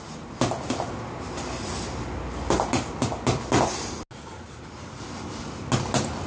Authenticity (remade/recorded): recorded